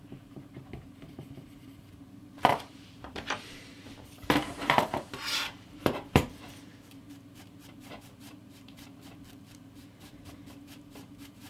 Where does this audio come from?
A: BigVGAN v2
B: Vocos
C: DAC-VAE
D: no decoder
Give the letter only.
A